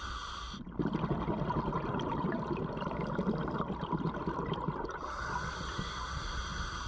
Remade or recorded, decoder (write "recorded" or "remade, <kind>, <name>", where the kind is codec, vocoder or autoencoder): recorded